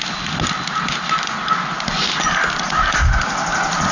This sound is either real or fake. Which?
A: real